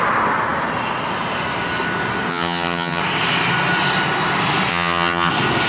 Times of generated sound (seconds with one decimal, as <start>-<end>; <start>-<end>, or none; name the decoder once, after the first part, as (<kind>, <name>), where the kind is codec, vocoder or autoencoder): 2.3-3.0 (vocoder, HiFi-GAN); 4.7-5.3